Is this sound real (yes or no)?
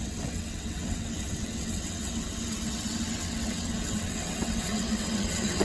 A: no